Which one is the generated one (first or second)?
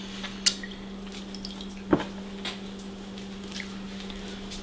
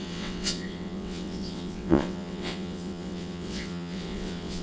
second